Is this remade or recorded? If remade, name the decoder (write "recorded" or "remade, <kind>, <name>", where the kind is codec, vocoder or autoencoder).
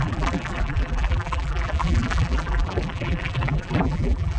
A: remade, vocoder, BigVGAN v2